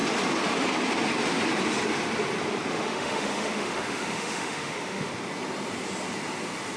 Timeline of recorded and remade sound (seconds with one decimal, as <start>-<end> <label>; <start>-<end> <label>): 0.0-2.7 recorded; 2.7-5.1 remade; 5.1-6.8 recorded